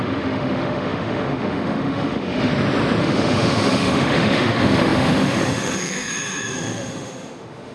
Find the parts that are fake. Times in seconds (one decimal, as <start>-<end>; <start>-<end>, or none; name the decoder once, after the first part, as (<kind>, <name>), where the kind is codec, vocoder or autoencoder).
0.0-2.5 (autoencoder, DAC-VAE); 3.0-7.7